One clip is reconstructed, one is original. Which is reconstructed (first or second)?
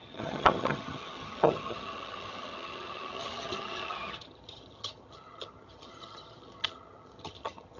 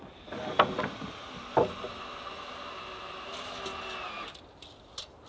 first